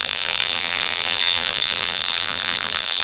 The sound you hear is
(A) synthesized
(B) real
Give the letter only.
A